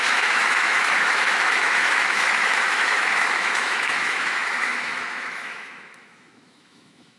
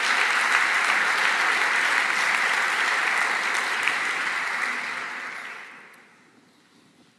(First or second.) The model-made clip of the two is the first